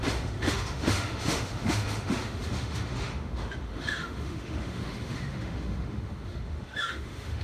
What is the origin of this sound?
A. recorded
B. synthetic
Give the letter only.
B